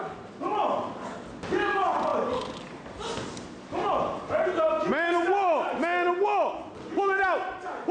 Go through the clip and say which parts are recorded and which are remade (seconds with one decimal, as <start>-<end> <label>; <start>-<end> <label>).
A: 0.0-7.9 recorded